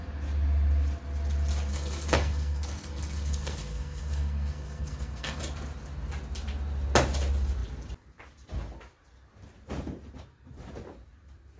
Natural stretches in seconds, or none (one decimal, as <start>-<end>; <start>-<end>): 0.0-1.7; 5.4-11.6